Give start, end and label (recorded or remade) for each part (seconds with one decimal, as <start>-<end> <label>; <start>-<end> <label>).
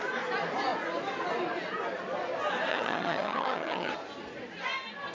0.0-2.7 recorded; 2.7-3.9 remade; 3.9-5.1 recorded